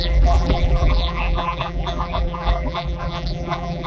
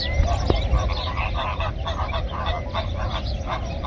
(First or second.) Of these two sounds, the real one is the second